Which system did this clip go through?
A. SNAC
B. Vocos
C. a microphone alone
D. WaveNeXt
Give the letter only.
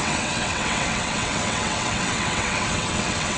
D